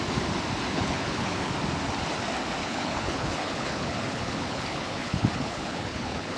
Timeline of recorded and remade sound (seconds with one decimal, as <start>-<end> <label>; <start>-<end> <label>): 0.0-0.7 recorded; 0.7-1.5 remade; 1.5-2.6 recorded; 2.6-6.4 remade